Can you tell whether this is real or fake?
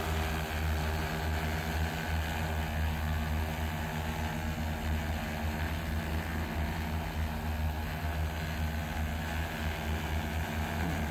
real